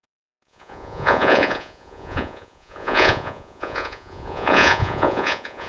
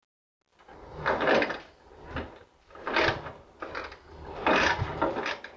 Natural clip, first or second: second